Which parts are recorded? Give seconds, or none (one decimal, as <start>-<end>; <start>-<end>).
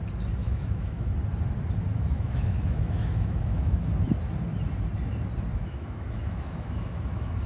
0.0-0.4; 1.1-1.9; 3.9-5.5